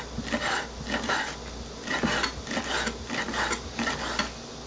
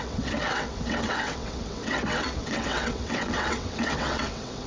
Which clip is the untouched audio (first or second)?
first